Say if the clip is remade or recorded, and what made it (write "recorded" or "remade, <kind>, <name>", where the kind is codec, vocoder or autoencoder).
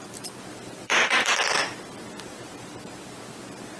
remade, vocoder, BigVGAN v2